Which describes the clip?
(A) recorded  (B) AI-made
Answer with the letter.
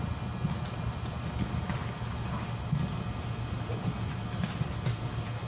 A